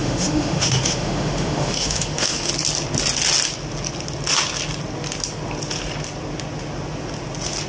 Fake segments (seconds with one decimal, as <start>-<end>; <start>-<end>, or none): 0.0-2.5